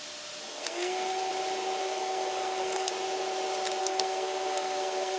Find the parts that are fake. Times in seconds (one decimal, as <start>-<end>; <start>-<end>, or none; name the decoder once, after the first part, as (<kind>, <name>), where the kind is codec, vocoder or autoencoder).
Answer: 0.5-1.3 (codec, SNAC); 1.8-2.9; 3.8-5.2